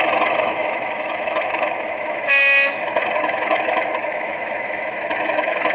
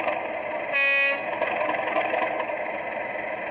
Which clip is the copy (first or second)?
first